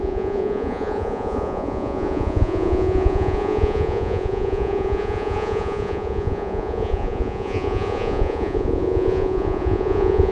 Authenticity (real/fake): fake